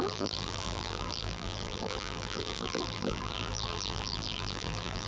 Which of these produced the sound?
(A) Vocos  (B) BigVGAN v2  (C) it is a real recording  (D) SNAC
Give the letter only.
B